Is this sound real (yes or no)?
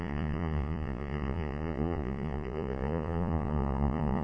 no